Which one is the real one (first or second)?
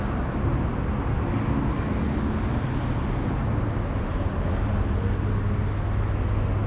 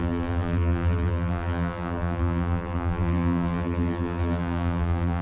first